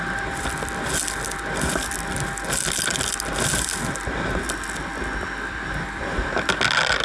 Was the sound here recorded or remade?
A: recorded